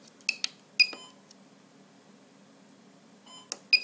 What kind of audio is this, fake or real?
real